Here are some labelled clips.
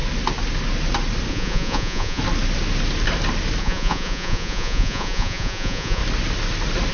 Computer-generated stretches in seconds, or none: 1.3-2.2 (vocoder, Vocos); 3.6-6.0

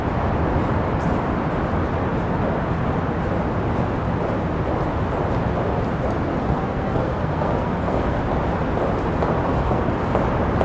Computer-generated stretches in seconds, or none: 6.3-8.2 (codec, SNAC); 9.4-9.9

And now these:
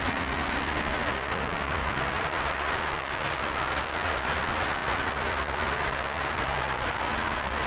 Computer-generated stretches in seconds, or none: 0.0-7.7 (vocoder, Vocos)

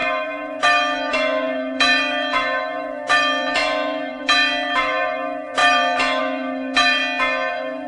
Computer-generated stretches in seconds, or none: 0.0-7.0 (vocoder, BigVGAN v2); 7.5-7.9

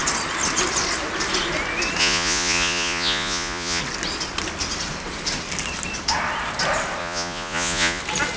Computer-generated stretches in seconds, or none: 2.0-3.8 (vocoder, Vocos); 7.0-8.0

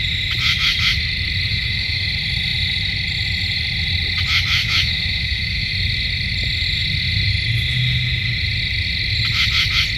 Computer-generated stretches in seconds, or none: 1.5-2.1 (autoencoder, DAC-VAE); 4.6-5.7